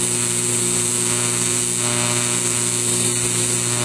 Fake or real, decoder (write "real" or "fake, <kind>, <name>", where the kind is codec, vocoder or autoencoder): real